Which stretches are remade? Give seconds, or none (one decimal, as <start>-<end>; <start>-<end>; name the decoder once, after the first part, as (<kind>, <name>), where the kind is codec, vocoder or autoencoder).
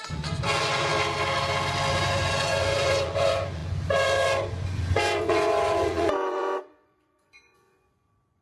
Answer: 0.0-0.9 (vocoder, Vocos); 1.9-8.4